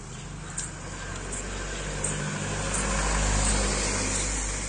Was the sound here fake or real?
real